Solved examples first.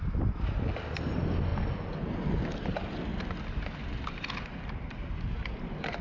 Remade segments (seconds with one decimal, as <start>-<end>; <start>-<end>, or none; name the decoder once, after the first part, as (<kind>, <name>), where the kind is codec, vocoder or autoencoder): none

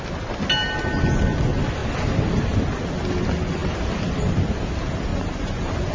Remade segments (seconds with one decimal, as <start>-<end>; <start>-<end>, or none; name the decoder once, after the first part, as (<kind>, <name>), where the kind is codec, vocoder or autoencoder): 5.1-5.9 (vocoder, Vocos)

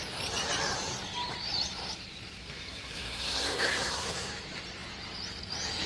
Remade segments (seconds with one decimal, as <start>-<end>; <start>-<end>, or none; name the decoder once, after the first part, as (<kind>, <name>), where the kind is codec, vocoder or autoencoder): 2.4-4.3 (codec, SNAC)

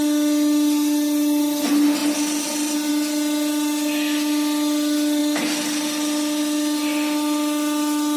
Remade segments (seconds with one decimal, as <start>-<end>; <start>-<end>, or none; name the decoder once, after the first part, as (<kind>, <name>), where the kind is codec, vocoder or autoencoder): none